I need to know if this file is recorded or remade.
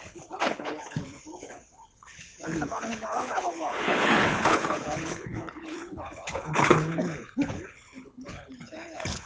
remade